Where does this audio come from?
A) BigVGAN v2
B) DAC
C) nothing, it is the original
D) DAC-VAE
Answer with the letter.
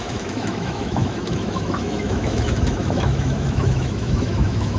D